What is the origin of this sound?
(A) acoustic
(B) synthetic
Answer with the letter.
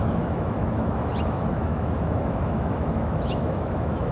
B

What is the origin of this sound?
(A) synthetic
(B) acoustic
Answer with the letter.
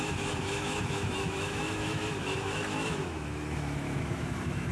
A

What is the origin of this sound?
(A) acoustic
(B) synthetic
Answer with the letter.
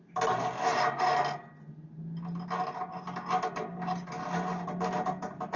A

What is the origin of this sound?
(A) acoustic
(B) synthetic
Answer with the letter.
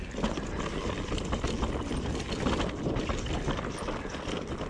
A